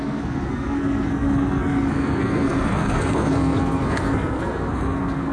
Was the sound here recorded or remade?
remade